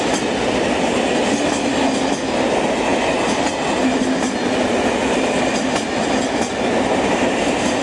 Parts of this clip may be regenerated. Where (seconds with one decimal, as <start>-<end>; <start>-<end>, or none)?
none